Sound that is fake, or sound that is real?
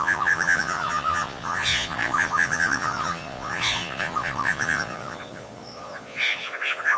fake